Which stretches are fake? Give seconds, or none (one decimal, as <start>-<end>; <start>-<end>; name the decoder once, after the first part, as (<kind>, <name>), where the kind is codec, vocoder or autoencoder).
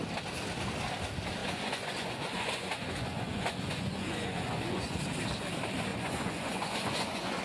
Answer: 1.4-5.0 (vocoder, Vocos); 5.9-7.4